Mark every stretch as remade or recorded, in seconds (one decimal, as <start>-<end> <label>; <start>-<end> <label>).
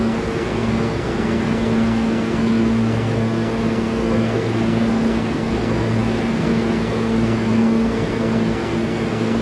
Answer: 0.0-9.4 remade